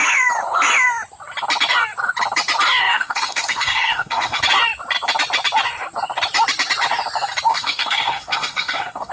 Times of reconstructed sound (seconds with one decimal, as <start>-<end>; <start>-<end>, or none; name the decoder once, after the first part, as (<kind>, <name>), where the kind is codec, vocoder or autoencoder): 2.8-4.4 (codec, SNAC); 7.5-9.1